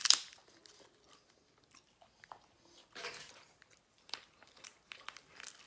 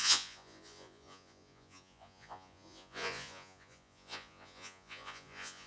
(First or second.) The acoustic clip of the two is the first